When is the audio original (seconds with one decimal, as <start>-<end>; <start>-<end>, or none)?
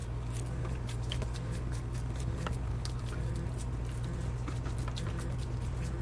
3.3-6.0